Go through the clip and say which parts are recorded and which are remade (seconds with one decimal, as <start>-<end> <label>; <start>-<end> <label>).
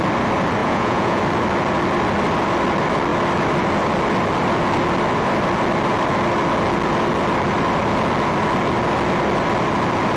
0.0-0.6 recorded; 0.6-1.2 remade; 1.2-10.2 recorded